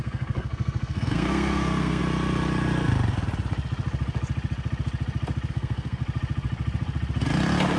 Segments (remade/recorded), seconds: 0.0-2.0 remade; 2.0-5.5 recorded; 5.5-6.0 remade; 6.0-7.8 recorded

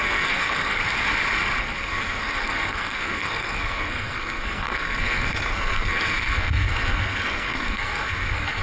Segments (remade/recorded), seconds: 0.0-0.8 remade; 0.8-1.6 recorded; 1.6-8.6 remade

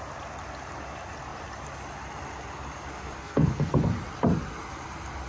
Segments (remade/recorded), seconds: 0.0-3.2 recorded; 3.2-3.9 remade; 3.9-5.3 recorded

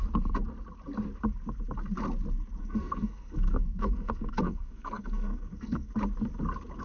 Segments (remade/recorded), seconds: 0.0-2.6 recorded; 2.6-5.9 remade; 5.9-6.8 recorded

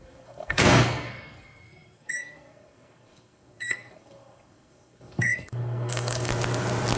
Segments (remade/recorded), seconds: 0.0-6.3 remade; 6.3-7.0 recorded

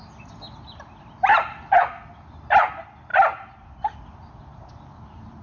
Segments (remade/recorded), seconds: 0.0-5.4 recorded

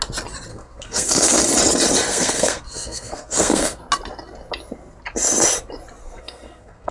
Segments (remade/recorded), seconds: 0.0-0.5 recorded; 0.5-1.4 remade; 1.4-2.1 recorded; 2.1-3.8 remade; 3.8-6.0 recorded; 6.0-6.9 remade

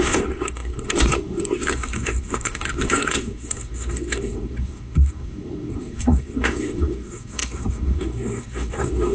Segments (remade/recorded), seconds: 0.0-9.1 remade